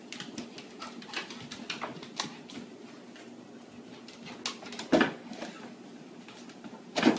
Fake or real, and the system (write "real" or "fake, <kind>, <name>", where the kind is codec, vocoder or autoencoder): real